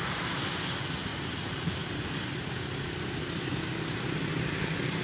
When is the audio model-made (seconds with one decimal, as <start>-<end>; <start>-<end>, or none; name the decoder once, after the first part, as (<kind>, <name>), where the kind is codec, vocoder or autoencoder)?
none